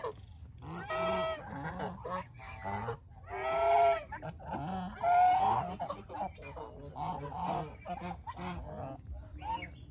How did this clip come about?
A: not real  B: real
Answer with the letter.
B